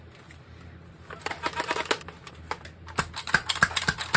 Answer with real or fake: real